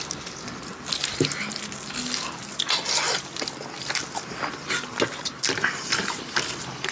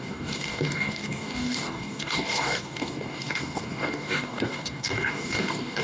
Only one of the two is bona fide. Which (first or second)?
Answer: first